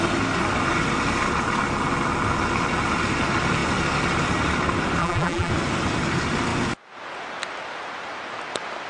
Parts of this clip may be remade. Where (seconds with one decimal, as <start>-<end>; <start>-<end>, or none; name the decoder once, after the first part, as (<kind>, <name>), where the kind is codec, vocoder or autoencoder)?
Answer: 5.0-5.5 (vocoder, BigVGAN v2)